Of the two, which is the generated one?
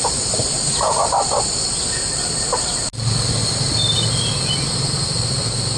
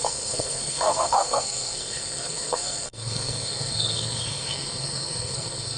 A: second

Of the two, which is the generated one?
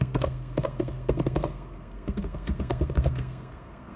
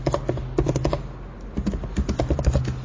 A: first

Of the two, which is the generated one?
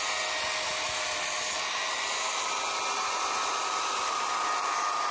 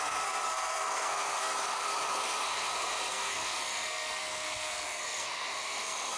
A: second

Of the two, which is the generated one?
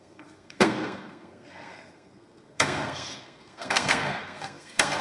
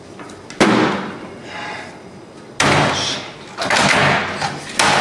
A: first